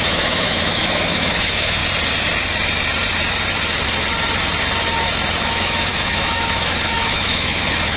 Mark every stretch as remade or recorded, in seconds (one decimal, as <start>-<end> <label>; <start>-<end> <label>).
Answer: 0.0-1.8 remade; 1.8-5.4 recorded; 5.4-8.0 remade